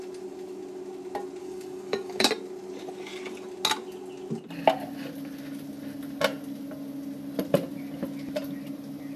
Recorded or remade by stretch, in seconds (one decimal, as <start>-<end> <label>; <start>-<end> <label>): 0.0-1.4 recorded; 1.4-2.3 remade; 2.3-9.2 recorded